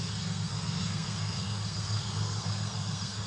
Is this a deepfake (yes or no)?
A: yes